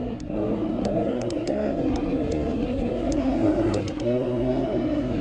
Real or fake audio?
fake